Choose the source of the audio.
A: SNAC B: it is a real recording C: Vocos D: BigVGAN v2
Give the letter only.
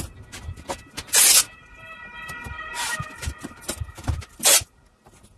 B